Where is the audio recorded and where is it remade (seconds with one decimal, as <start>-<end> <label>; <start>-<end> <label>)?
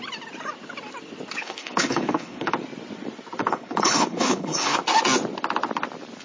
0.0-1.4 recorded; 1.4-2.5 remade; 2.5-3.4 recorded; 3.4-4.8 remade; 4.8-6.2 recorded